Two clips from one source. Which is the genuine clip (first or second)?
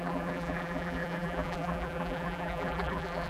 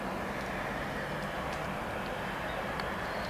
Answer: second